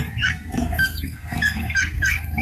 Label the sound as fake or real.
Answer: fake